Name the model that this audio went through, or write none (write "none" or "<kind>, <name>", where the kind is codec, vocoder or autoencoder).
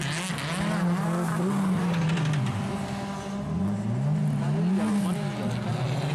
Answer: none